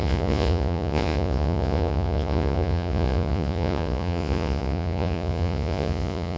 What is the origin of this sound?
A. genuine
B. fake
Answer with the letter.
B